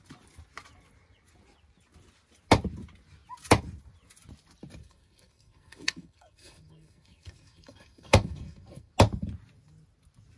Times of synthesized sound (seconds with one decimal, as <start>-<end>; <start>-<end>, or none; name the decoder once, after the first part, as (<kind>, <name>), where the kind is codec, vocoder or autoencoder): 4.8-8.9 (codec, SNAC)

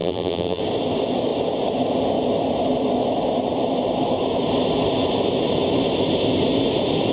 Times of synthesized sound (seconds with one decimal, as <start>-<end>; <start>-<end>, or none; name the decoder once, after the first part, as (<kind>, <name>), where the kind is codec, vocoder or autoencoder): 0.0-0.6 (vocoder, BigVGAN v2)